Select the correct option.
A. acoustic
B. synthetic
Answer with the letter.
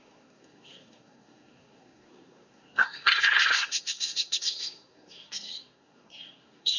B